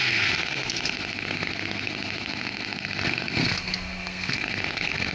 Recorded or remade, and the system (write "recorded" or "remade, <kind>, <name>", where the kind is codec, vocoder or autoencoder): remade, codec, SNAC